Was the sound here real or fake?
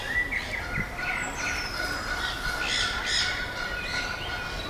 real